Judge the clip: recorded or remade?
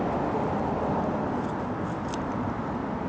recorded